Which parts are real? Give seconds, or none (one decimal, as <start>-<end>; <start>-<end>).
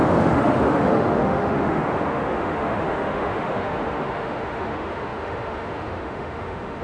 none